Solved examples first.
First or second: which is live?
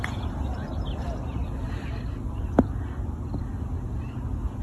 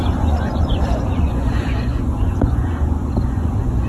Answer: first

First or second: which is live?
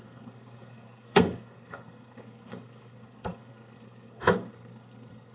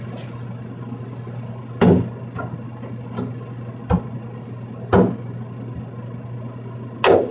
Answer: second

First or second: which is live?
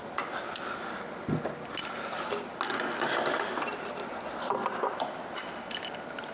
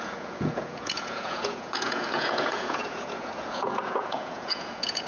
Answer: first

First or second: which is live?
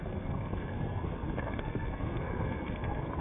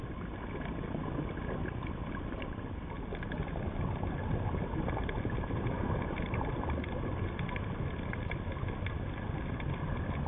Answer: second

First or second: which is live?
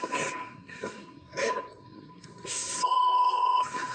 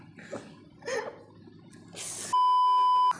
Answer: second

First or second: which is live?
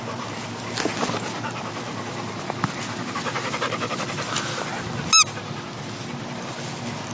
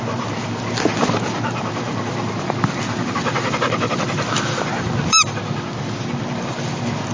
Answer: first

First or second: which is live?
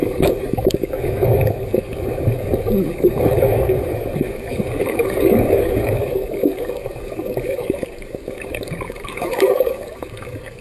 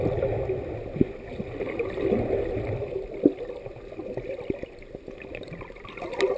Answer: second